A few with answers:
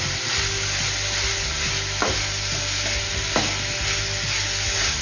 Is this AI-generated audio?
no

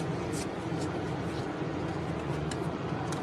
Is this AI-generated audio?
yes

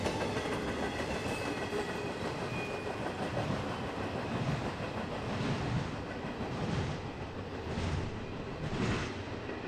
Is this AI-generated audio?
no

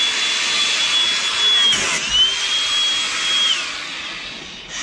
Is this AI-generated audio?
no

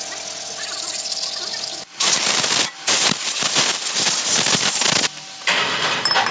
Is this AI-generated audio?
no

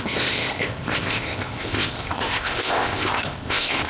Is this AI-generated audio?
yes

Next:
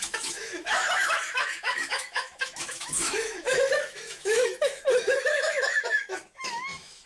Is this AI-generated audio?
yes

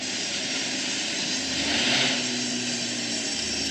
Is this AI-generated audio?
yes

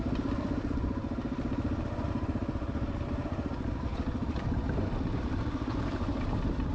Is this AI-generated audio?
yes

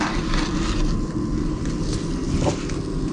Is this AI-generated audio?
no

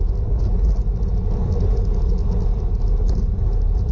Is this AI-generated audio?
no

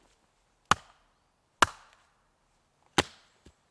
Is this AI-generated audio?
no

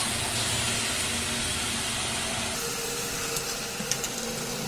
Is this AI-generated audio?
no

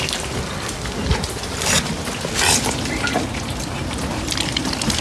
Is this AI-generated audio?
no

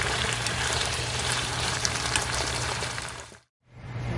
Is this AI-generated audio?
yes